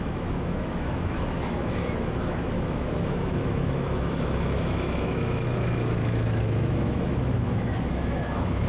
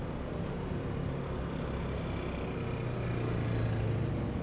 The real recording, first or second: second